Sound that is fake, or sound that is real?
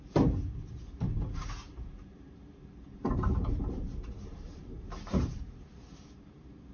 fake